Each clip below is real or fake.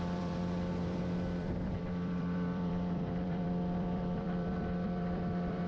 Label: fake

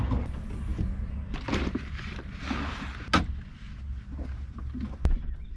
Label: real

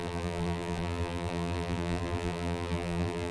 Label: fake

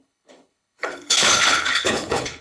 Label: fake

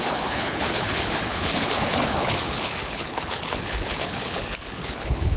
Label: fake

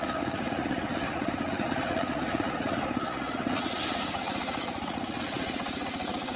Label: fake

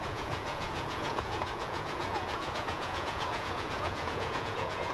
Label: fake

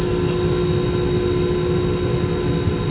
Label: real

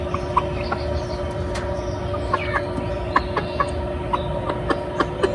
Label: real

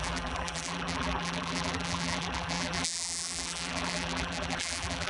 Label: fake